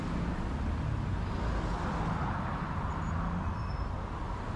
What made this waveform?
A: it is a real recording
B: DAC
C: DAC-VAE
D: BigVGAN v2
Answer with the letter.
A